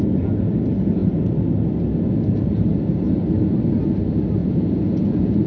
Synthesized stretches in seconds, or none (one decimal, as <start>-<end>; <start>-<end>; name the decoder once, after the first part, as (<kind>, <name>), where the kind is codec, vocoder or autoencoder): 4.4-5.5 (vocoder, Vocos)

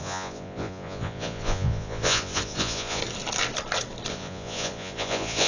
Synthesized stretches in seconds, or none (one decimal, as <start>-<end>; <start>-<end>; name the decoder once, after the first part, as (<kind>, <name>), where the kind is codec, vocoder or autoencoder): 0.0-3.0 (vocoder, Vocos); 4.1-5.5